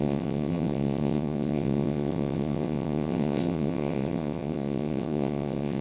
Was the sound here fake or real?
fake